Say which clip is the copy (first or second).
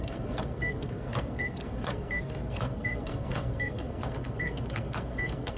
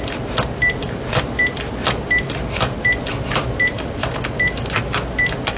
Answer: first